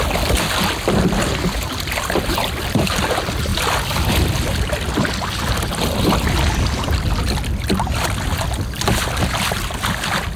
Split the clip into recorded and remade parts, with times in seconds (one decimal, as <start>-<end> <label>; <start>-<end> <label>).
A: 0.0-3.5 recorded; 3.5-4.1 remade; 4.1-10.4 recorded